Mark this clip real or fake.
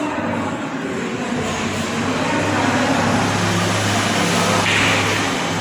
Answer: real